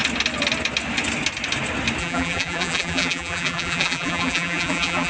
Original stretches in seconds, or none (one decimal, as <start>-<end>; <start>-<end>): 0.0-2.0